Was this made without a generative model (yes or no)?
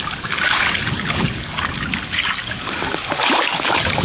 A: no